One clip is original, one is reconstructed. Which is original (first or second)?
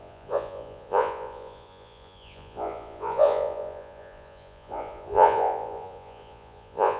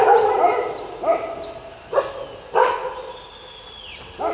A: second